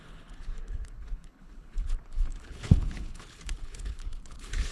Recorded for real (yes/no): no